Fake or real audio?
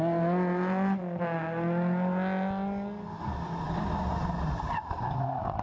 real